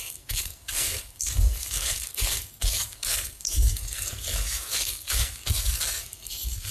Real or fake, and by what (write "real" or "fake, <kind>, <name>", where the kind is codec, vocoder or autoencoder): fake, codec, SNAC